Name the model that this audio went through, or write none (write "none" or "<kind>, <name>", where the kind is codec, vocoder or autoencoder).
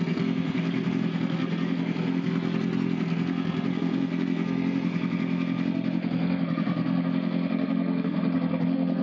codec, SNAC